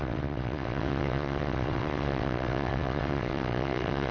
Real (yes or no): no